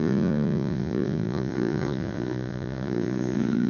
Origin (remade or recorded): remade